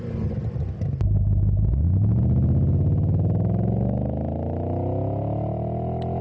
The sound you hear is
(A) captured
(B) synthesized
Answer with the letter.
A